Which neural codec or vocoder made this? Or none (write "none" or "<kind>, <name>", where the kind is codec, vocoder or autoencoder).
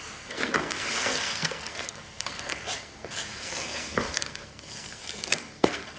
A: codec, SNAC